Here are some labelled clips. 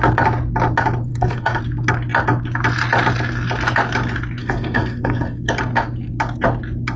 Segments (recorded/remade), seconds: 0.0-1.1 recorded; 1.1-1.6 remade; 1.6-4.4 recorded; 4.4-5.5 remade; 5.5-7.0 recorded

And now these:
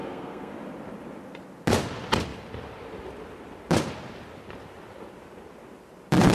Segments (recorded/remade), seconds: 0.0-0.5 remade; 0.5-6.3 recorded